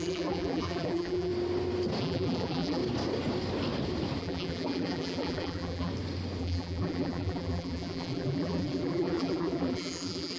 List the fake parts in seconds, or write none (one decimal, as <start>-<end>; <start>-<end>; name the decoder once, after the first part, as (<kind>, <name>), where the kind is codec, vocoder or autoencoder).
0.0-1.3 (vocoder, BigVGAN v2); 2.0-2.8; 4.2-5.9; 6.4-10.4